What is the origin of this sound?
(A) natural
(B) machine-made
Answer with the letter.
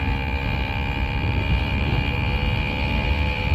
A